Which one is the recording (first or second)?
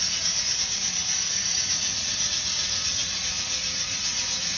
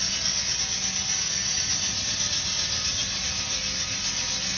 second